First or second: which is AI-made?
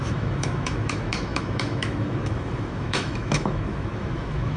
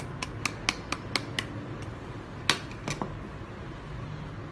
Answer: first